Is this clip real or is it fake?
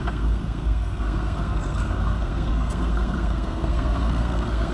fake